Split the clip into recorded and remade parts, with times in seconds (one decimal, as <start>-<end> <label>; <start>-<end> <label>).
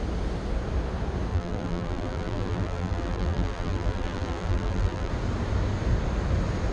0.0-1.3 recorded; 1.3-5.1 remade; 5.1-6.7 recorded